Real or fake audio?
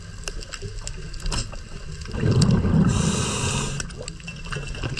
real